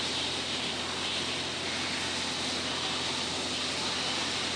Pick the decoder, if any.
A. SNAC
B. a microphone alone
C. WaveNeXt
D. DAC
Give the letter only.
B